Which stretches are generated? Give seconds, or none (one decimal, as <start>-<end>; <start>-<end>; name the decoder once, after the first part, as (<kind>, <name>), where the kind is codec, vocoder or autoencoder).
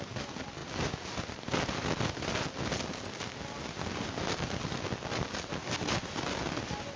none